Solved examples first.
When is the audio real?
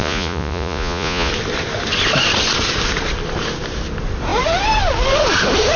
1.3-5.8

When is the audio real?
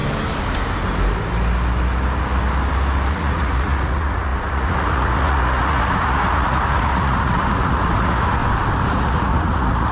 0.0-3.1; 8.4-8.9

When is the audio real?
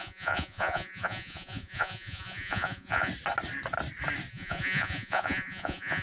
3.1-4.3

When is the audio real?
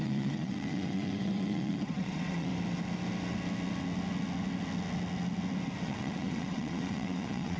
2.5-5.8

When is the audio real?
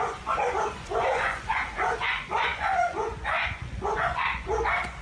none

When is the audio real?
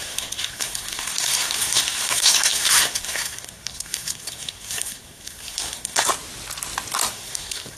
6.1-7.1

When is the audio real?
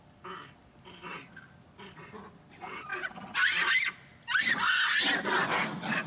0.0-6.1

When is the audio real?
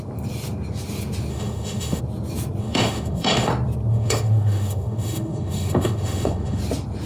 0.0-1.3; 2.0-2.6; 3.5-3.9; 6.6-7.1